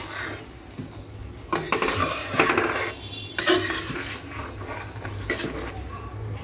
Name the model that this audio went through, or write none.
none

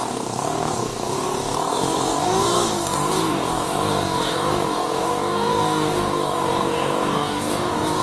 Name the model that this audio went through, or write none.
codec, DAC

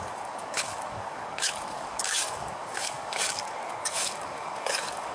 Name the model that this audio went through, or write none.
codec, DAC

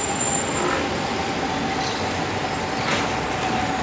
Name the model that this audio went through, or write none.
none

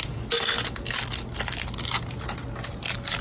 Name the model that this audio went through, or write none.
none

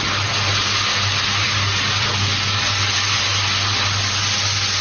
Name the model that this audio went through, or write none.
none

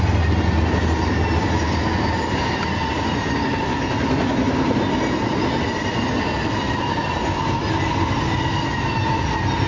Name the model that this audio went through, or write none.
none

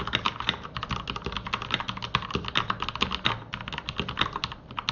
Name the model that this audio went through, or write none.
none